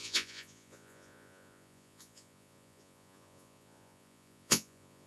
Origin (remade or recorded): remade